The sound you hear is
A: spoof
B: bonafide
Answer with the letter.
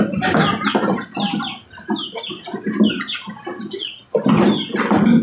B